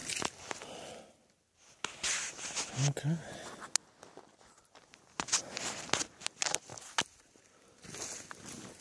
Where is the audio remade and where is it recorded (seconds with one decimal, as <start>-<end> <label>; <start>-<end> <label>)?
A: 0.0-8.8 recorded